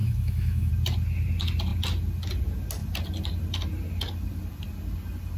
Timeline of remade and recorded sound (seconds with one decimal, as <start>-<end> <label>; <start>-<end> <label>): 0.0-0.7 remade; 0.7-5.4 recorded